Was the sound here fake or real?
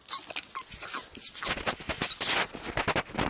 real